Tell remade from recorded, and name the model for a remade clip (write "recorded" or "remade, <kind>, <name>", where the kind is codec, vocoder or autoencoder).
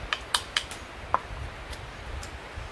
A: recorded